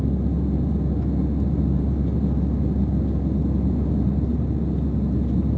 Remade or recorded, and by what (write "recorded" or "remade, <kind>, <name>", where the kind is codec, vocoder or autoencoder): recorded